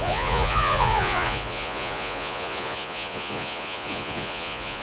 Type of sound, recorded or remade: remade